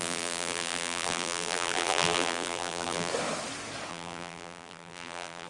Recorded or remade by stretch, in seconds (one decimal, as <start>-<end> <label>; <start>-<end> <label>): 0.0-3.1 remade; 3.1-3.9 recorded; 3.9-5.5 remade